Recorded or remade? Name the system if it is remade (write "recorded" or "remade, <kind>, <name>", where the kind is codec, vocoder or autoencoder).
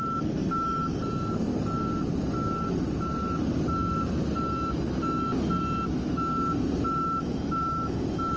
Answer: recorded